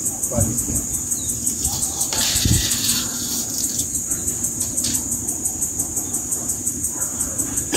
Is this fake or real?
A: fake